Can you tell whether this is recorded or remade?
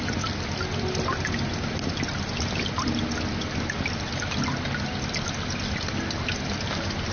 recorded